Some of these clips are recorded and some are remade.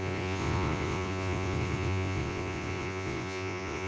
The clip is remade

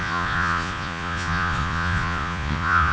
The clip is remade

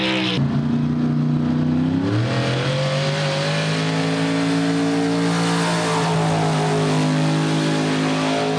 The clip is recorded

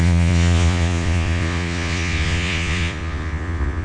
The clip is remade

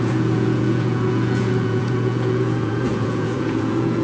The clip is remade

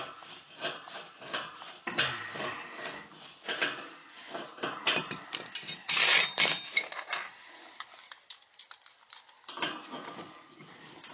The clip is recorded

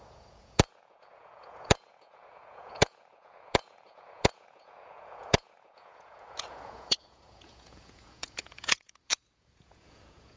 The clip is remade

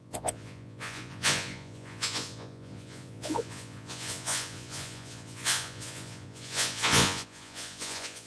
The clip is remade